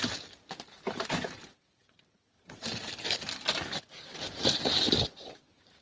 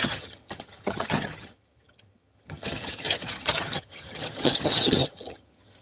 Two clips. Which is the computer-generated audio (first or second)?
second